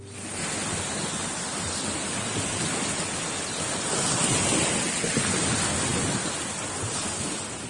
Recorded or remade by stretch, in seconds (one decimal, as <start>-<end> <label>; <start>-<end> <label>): 0.0-7.7 recorded